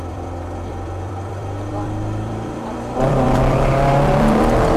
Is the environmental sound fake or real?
fake